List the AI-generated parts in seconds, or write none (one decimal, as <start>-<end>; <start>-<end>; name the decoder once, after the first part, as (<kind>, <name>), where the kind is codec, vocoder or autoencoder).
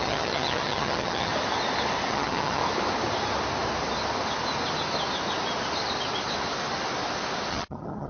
0.0-1.3 (vocoder, HiFi-GAN); 2.1-2.6; 7.5-8.1